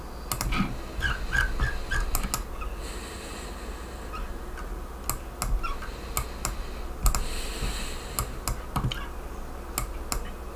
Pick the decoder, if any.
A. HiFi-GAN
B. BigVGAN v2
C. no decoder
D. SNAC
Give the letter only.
C